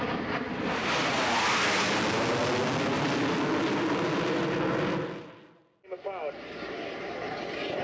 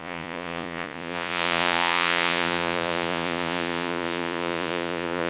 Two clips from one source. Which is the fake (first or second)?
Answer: second